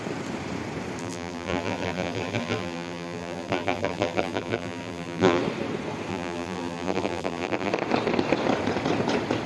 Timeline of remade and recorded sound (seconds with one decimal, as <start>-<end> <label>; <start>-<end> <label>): 0.0-1.0 recorded; 1.0-5.4 remade; 5.4-6.1 recorded; 6.1-7.7 remade; 7.7-9.5 recorded